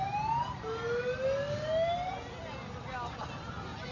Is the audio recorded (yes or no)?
yes